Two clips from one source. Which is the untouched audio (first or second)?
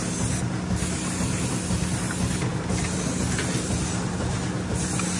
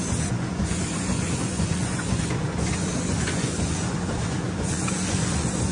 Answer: first